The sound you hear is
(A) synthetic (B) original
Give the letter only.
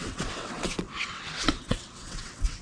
A